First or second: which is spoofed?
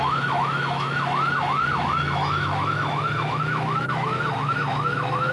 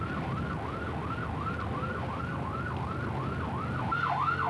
first